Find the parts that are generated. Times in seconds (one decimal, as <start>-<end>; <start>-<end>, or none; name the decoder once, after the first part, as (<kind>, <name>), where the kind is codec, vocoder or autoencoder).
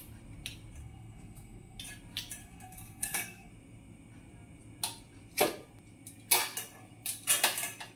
0.8-1.8 (codec, SNAC); 2.4-3.5